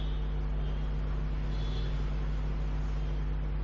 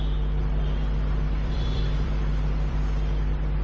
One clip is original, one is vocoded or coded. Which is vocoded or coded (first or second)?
second